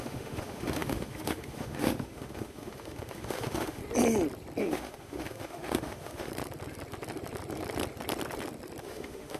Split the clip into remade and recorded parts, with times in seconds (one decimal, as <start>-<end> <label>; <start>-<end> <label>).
0.0-3.8 remade; 3.8-4.6 recorded; 4.6-6.3 remade; 6.3-8.8 recorded; 8.8-9.4 remade